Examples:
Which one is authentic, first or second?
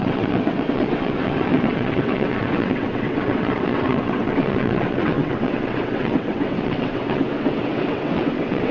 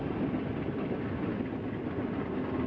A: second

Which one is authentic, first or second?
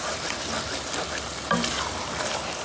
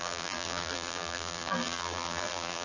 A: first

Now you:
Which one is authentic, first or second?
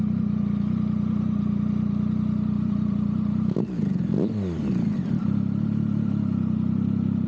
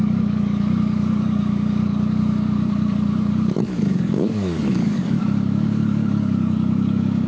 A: first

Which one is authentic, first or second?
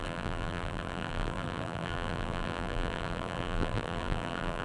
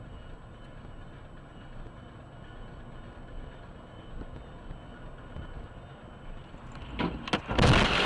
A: second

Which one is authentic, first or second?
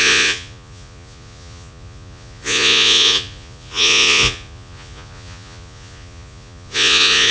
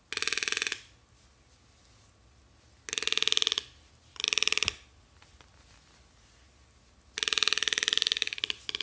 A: second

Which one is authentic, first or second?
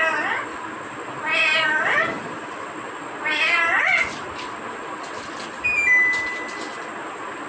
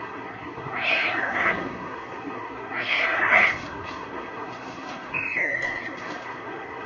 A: first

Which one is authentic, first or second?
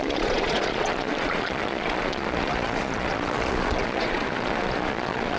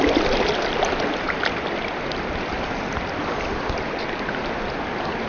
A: second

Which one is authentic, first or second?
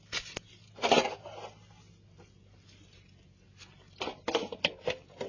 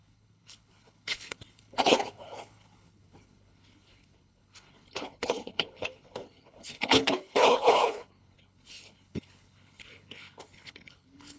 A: first